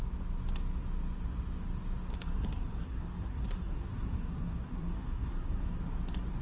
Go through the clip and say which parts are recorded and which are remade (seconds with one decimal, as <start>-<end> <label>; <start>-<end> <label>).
0.0-2.1 recorded; 2.1-5.8 remade; 5.8-6.4 recorded